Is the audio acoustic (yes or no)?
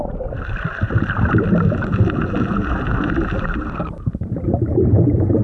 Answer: no